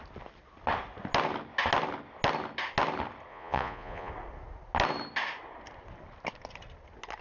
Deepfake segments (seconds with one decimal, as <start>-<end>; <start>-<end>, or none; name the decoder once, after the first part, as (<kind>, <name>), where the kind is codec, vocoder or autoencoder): 3.3-4.1 (vocoder, Vocos)